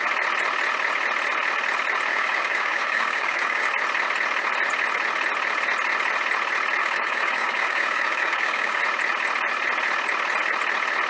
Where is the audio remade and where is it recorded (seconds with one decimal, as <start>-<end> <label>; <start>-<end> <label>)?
0.0-2.1 recorded; 2.1-3.7 remade; 3.7-6.8 recorded; 6.8-8.8 remade; 8.8-11.1 recorded